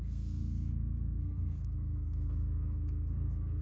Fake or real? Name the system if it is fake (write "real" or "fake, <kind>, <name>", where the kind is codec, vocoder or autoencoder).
fake, codec, SNAC